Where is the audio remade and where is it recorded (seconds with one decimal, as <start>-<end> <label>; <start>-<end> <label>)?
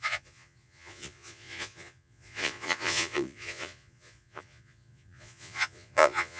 0.0-6.4 remade